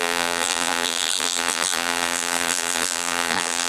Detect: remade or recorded remade